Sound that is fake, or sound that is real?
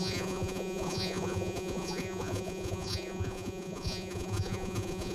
fake